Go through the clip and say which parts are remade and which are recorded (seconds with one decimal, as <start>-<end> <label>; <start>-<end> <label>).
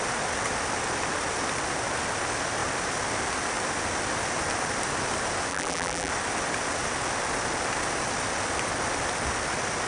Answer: 0.0-5.5 recorded; 5.5-6.1 remade; 6.1-9.9 recorded